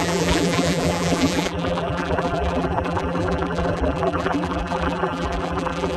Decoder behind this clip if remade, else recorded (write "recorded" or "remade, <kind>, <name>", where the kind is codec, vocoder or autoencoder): remade, vocoder, BigVGAN v2